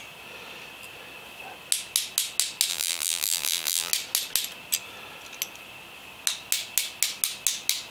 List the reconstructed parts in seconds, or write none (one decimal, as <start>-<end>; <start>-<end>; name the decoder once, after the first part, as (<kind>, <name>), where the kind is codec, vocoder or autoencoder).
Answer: 2.7-3.9 (vocoder, BigVGAN v2)